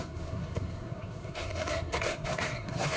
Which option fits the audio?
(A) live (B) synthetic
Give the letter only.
B